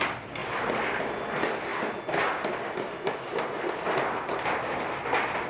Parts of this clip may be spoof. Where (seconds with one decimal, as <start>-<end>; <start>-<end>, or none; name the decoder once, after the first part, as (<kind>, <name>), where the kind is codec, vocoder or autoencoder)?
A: none